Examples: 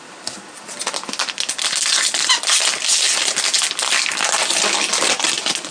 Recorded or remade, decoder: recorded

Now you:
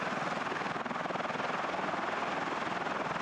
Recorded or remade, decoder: recorded